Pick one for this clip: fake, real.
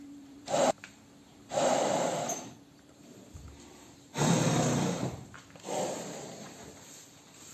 fake